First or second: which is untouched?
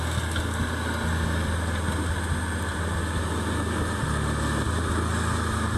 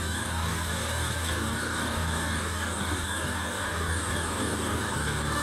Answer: first